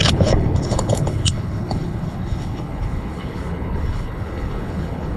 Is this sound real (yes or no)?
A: no